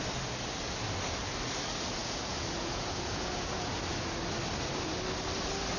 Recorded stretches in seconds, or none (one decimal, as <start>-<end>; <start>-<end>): 0.0-2.0; 3.8-5.8